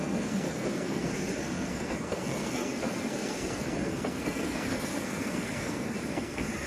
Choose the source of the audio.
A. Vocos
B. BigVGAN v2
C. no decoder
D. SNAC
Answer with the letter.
D